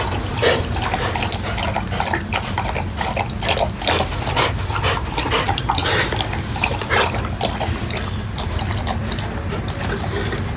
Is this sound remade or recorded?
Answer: recorded